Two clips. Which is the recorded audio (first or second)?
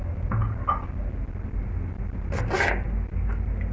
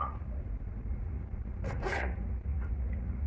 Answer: first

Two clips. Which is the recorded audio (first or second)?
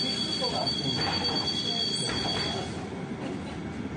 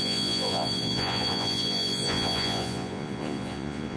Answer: first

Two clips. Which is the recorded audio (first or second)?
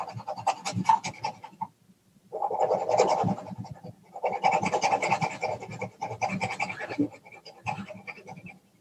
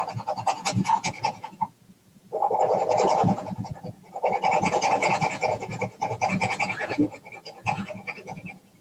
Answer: first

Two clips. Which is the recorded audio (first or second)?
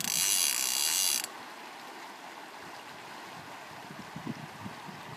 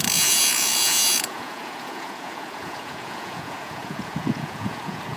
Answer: first